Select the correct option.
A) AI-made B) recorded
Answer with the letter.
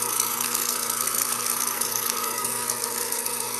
A